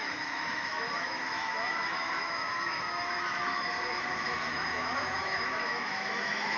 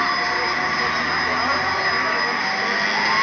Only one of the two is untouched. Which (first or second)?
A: second